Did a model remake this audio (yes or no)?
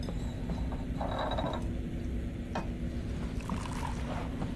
no